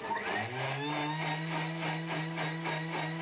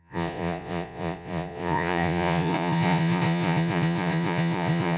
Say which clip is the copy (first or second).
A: second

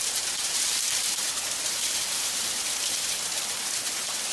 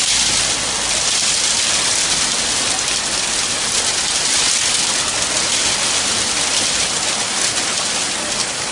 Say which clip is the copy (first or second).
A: first